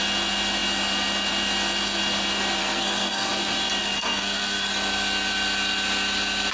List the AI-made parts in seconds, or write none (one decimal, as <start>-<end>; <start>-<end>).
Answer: 2.6-3.3; 3.8-4.7